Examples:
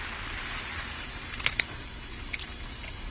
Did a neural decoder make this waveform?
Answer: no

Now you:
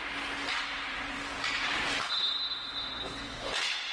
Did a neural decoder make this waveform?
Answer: no